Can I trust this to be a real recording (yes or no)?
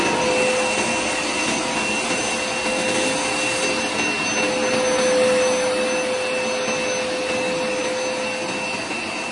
yes